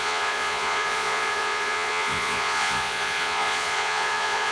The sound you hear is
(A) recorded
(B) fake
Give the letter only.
B